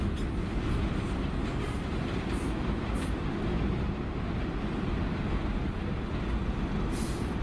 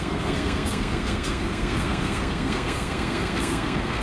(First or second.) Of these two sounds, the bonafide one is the first